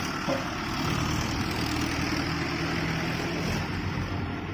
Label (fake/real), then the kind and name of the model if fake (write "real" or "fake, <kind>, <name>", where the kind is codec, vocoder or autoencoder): real